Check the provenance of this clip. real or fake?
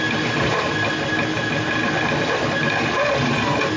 real